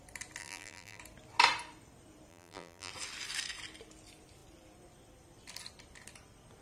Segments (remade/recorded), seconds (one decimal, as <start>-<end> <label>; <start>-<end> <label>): 0.0-0.4 recorded; 0.4-1.0 remade; 1.0-2.3 recorded; 2.3-2.9 remade; 2.9-6.6 recorded